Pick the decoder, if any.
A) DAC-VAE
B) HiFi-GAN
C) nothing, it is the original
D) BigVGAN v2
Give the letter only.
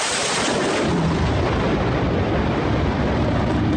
C